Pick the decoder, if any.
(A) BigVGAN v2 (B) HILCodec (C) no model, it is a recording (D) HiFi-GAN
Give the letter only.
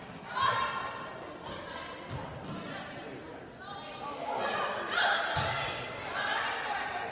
C